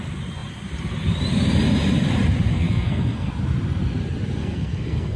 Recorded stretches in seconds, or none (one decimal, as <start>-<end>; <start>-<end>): 0.0-2.5; 3.3-4.4